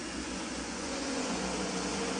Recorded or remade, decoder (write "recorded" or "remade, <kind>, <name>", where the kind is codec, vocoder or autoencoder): remade, vocoder, Vocos